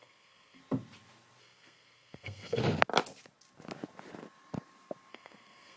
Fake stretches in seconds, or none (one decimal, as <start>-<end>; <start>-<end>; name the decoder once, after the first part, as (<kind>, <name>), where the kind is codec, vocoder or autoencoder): 0.0-0.6 (codec, SNAC); 1.4-2.6; 5.1-5.8